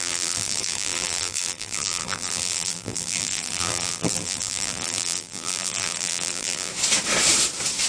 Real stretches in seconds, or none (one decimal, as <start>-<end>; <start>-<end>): 6.7-7.9